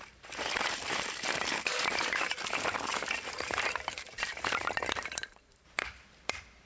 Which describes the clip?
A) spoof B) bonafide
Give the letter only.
A